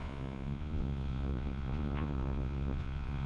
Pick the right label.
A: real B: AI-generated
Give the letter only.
B